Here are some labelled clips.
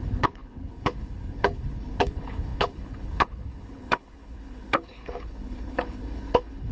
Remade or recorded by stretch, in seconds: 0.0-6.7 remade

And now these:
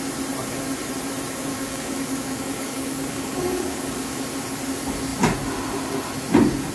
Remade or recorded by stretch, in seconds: 0.0-1.5 recorded; 1.5-4.2 remade; 4.2-6.7 recorded

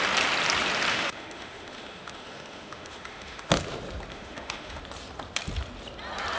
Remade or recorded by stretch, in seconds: 0.0-0.9 recorded; 0.9-3.5 remade; 3.5-4.1 recorded; 4.1-4.8 remade; 4.8-6.4 recorded

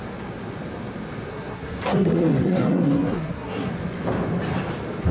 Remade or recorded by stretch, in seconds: 0.0-1.3 recorded; 1.3-3.7 remade; 3.7-5.1 recorded